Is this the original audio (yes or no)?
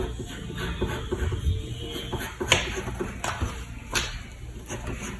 yes